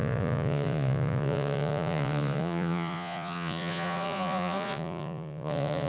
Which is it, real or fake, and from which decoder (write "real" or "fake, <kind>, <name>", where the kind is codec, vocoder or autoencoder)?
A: fake, vocoder, Vocos